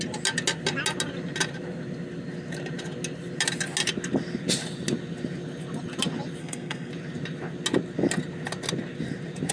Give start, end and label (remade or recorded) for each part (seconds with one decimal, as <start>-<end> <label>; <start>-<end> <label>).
0.0-6.4 recorded; 6.4-6.9 remade; 6.9-9.5 recorded

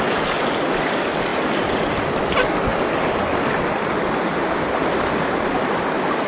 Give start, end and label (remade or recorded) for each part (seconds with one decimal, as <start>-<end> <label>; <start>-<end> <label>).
0.0-2.7 recorded; 2.7-3.3 remade; 3.3-6.3 recorded

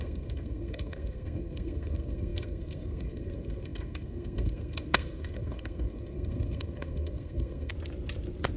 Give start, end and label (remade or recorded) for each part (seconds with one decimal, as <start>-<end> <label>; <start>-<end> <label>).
0.0-7.7 remade; 7.7-8.6 recorded

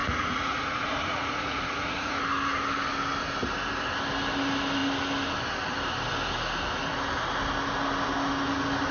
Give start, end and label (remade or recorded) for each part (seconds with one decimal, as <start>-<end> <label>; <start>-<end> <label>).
0.0-2.1 remade; 2.1-8.9 recorded

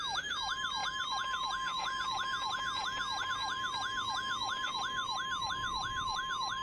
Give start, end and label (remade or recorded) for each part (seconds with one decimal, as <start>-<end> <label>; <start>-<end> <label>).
0.0-5.0 remade; 5.0-5.5 recorded; 5.5-6.6 remade